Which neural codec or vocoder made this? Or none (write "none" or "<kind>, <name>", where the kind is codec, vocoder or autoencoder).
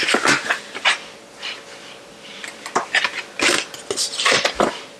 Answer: none